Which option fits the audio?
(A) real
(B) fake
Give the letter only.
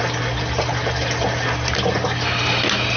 A